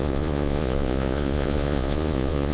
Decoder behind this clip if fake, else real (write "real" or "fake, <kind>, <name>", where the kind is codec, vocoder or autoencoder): fake, vocoder, Vocos